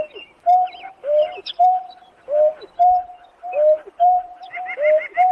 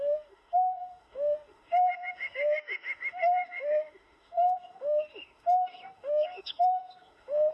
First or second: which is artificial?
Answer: second